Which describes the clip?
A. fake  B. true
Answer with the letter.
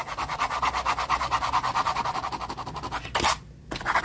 B